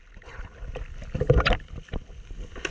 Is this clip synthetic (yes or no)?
no